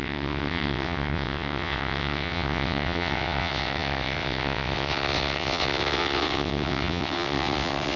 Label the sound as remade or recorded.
remade